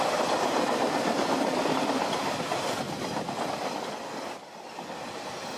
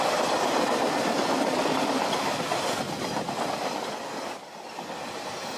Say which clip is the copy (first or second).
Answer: first